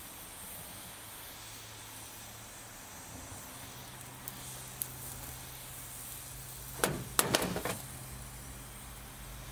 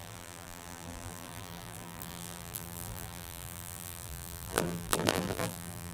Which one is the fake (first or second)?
second